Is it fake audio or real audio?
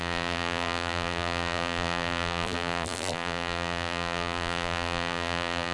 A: fake